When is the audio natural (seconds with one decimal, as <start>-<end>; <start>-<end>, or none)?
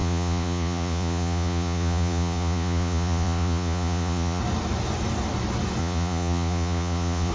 4.4-5.8